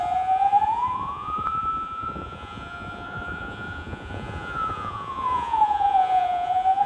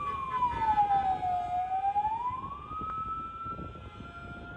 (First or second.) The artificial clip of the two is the first